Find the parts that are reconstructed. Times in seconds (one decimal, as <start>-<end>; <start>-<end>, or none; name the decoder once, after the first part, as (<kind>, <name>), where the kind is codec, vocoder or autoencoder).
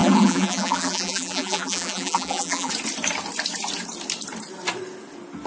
0.0-2.7 (vocoder, BigVGAN v2)